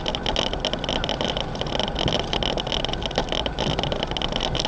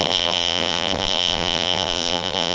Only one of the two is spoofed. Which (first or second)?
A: second